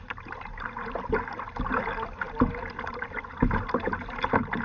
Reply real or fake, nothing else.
real